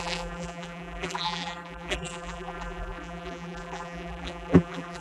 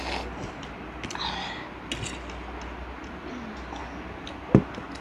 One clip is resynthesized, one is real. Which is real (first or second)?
second